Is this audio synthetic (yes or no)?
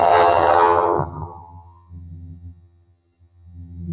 yes